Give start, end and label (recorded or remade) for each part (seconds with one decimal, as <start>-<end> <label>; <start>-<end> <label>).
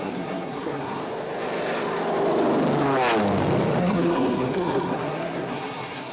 0.0-1.0 remade; 1.0-3.8 recorded; 3.8-6.1 remade